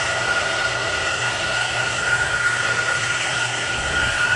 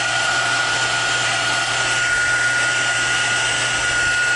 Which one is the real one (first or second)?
second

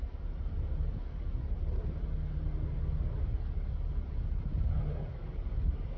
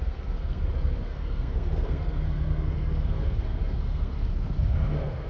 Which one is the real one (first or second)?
first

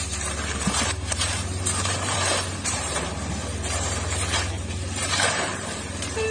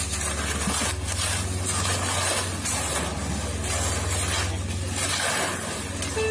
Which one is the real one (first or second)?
second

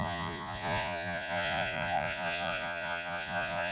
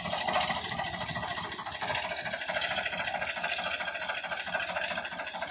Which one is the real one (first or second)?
second